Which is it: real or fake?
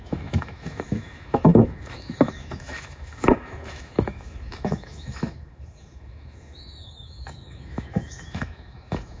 fake